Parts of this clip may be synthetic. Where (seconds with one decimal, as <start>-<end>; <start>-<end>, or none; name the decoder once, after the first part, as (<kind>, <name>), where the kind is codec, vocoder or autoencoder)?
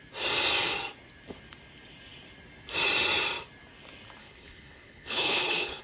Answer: 4.2-5.8 (codec, HILCodec)